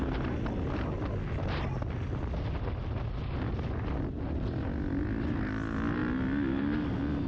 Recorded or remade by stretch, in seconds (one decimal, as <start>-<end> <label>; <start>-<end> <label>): 0.0-7.3 recorded